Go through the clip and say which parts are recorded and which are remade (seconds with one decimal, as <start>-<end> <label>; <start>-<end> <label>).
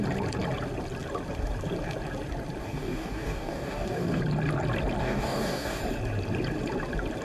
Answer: 0.0-2.6 recorded; 2.6-4.2 remade; 4.2-5.0 recorded; 5.0-5.8 remade; 5.8-7.2 recorded